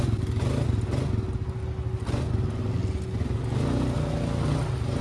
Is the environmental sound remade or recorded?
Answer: recorded